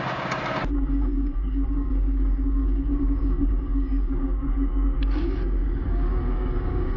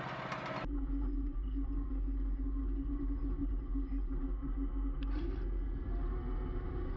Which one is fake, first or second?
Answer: first